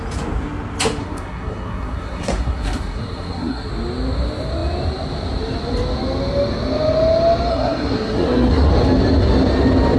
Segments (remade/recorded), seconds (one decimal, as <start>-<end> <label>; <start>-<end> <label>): 0.0-1.0 recorded; 1.0-3.7 remade; 3.7-7.5 recorded; 7.5-8.7 remade; 8.7-10.0 recorded